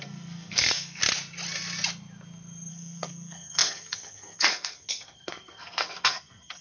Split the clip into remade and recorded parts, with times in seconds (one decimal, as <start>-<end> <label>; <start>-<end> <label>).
0.0-1.0 remade; 1.0-2.7 recorded; 2.7-6.6 remade